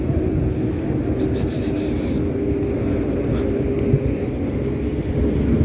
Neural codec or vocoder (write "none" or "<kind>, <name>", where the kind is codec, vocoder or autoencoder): none